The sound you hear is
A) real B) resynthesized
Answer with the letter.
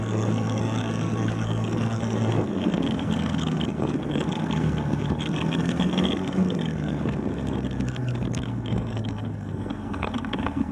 B